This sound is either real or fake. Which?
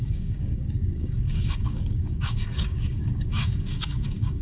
fake